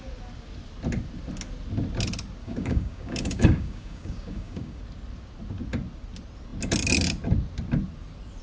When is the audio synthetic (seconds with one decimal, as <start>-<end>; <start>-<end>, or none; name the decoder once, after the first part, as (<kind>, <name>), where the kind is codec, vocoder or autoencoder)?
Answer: 2.4-4.8 (codec, DAC)